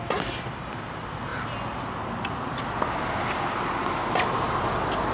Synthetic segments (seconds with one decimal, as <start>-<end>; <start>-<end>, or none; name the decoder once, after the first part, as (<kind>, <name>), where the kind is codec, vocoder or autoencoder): none